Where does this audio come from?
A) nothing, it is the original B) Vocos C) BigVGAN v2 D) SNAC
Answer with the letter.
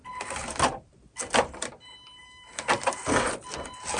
C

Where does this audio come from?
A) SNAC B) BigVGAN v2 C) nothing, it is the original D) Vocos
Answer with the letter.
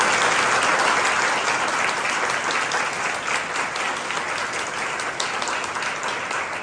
C